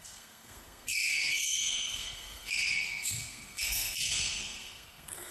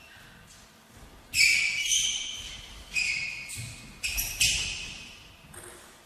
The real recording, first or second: second